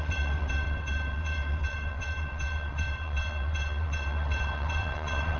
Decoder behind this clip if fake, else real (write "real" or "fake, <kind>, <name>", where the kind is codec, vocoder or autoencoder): fake, vocoder, WaveNeXt